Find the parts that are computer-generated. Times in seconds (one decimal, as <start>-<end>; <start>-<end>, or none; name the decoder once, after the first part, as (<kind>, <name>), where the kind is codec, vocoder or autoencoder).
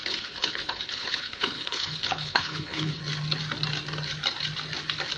0.0-3.0 (codec, HILCodec)